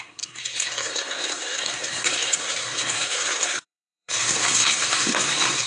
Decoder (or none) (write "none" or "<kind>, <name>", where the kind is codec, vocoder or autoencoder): codec, SNAC